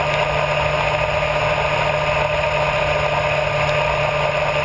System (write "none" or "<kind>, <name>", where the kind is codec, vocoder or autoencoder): none